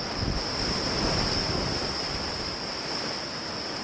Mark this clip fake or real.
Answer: real